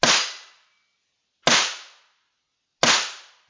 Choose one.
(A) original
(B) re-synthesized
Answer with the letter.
A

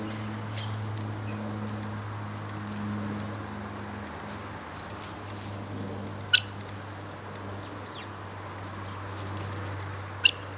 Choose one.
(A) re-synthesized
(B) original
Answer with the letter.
B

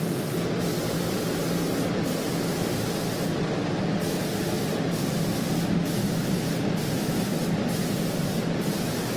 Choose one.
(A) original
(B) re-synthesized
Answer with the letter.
A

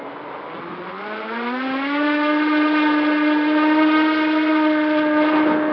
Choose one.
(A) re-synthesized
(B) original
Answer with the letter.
B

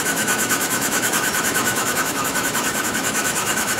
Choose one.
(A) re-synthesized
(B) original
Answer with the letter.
A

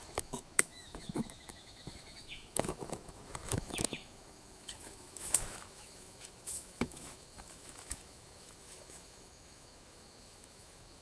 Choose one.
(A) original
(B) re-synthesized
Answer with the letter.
B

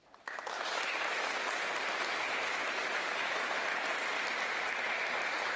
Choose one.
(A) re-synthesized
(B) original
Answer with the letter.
B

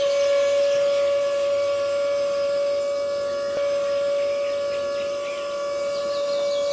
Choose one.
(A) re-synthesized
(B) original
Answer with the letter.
B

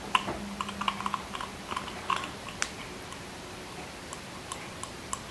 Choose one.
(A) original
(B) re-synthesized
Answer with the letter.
A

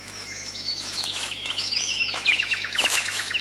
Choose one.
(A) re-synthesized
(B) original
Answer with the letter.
A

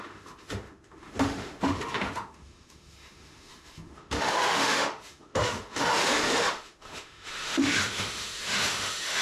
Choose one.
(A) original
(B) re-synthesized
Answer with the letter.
B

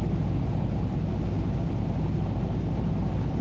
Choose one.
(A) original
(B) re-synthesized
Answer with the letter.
A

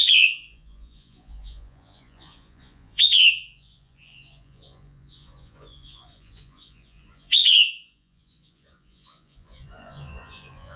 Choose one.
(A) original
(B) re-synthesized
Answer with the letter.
B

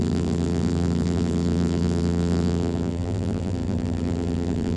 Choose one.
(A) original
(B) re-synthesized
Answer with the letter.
B